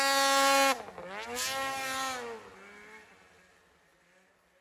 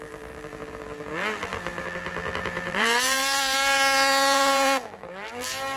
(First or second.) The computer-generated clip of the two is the second